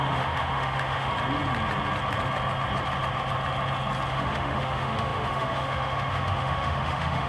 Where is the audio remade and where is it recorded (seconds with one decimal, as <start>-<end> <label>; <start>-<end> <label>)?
0.0-1.1 remade; 1.1-4.1 recorded; 4.1-7.3 remade